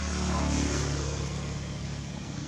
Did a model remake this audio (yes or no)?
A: yes